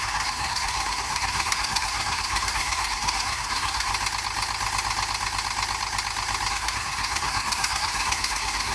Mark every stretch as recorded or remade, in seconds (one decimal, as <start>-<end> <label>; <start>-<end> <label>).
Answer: 0.0-3.9 remade; 3.9-6.5 recorded; 6.5-8.7 remade